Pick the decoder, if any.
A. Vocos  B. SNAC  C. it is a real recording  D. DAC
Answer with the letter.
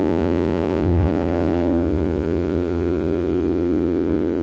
A